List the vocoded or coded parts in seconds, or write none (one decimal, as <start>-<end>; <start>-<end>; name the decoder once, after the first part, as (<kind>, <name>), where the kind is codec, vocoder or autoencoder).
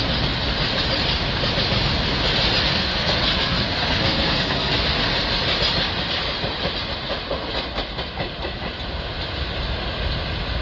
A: 2.8-5.0 (codec, SNAC)